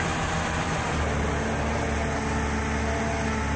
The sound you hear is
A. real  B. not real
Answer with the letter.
A